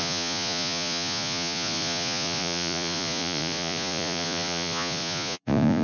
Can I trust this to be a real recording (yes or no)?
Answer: no